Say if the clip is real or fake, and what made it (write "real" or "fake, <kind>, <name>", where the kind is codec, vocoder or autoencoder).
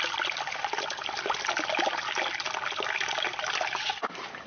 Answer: real